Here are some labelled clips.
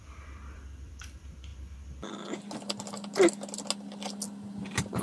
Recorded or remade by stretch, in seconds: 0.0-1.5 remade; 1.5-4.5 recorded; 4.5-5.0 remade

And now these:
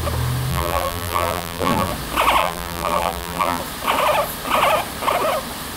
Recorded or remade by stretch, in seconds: 0.0-0.5 recorded; 0.5-1.9 remade; 1.9-2.4 recorded; 2.4-3.6 remade; 3.6-5.8 recorded